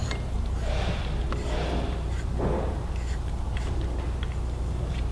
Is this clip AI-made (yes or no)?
no